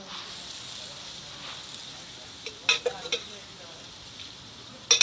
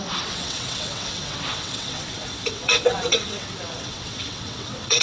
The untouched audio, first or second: first